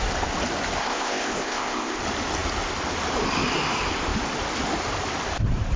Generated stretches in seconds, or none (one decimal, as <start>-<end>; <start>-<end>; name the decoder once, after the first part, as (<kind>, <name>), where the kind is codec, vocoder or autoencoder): 0.8-2.0 (codec, ZipCodec)